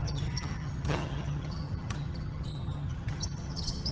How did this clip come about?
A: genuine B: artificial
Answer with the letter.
B